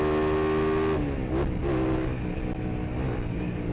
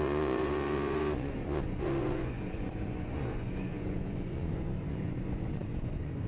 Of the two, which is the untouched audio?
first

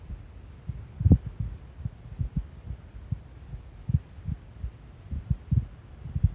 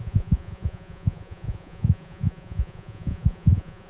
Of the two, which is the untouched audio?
first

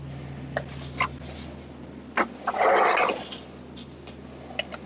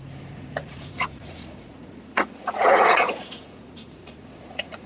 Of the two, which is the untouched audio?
first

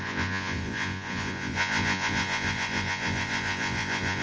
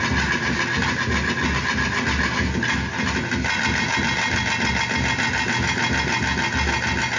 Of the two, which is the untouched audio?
second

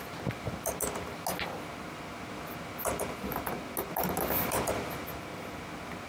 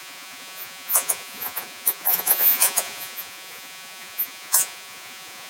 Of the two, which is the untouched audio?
first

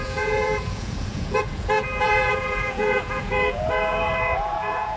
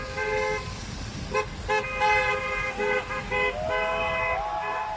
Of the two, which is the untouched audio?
second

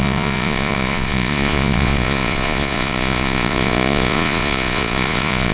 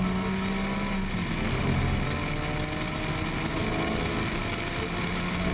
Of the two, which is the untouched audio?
second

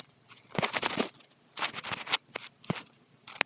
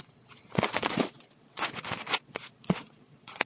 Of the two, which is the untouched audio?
first